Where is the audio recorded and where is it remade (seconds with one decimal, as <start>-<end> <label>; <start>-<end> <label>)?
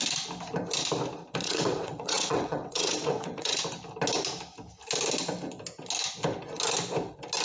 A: 0.0-1.4 recorded; 1.4-3.6 remade; 3.6-7.4 recorded